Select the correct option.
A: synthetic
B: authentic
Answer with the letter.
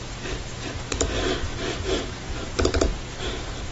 B